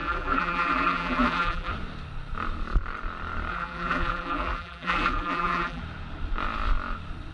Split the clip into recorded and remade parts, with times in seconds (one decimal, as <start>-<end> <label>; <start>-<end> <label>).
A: 0.0-1.7 remade; 1.7-3.5 recorded; 3.5-5.8 remade; 5.8-7.3 recorded